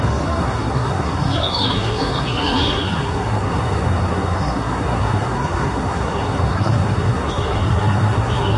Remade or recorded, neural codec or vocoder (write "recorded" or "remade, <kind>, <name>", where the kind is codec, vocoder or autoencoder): remade, codec, SNAC